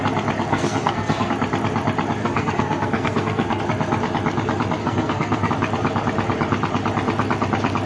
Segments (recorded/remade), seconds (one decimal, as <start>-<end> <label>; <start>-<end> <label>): 0.0-0.5 recorded; 0.5-1.3 remade; 1.3-2.2 recorded; 2.2-3.6 remade; 3.6-4.8 recorded; 4.8-5.5 remade; 5.5-7.9 recorded